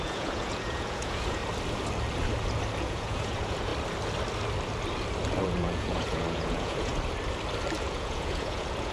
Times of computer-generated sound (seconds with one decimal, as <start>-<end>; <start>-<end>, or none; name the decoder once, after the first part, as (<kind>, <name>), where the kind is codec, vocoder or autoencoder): 0.0-1.4 (vocoder, Vocos); 2.8-3.7; 5.4-6.9; 7.8-8.9